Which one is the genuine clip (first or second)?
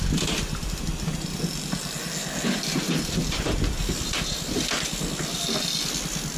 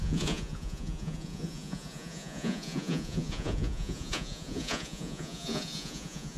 first